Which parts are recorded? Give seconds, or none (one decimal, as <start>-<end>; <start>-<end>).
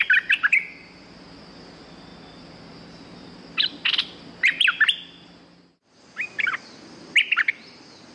0.0-8.1